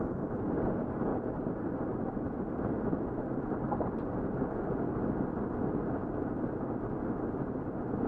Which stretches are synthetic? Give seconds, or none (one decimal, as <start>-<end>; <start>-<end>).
1.1-1.7